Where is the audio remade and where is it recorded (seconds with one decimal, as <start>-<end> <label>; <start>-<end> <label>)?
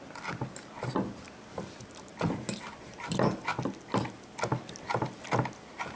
0.0-6.0 recorded